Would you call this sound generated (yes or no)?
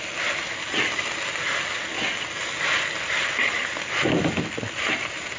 no